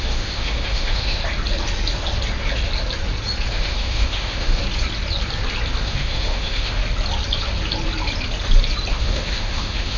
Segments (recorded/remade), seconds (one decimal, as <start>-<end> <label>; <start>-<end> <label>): 0.0-1.2 remade; 1.2-3.5 recorded; 3.5-4.6 remade; 4.6-5.8 recorded; 5.8-6.8 remade; 6.8-8.9 recorded; 8.9-10.0 remade